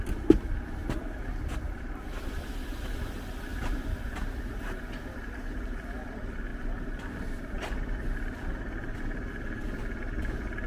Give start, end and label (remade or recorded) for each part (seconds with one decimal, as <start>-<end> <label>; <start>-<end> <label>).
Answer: 0.0-10.7 recorded